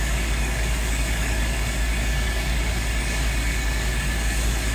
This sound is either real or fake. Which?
fake